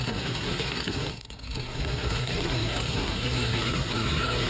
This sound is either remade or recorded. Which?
remade